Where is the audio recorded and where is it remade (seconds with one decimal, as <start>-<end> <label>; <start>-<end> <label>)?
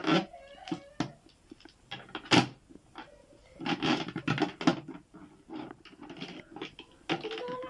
0.0-7.7 recorded